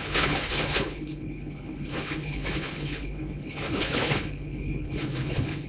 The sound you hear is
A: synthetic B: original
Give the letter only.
A